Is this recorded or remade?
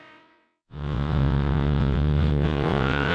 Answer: remade